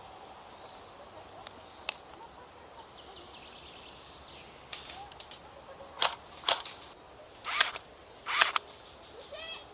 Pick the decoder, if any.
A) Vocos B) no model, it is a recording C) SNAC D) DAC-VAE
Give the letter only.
B